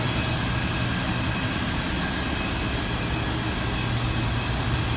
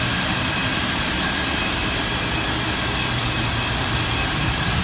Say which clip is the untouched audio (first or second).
first